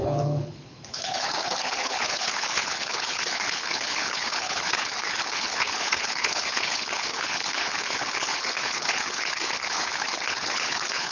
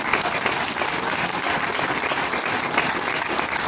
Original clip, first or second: second